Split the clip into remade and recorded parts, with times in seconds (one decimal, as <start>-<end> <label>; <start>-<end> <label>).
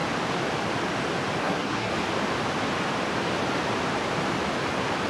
0.0-1.4 recorded; 1.4-1.9 remade; 1.9-5.1 recorded